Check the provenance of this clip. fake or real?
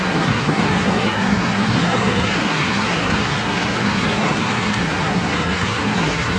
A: fake